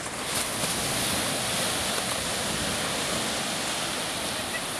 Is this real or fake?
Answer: real